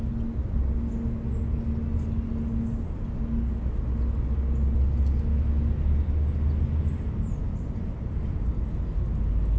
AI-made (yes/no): no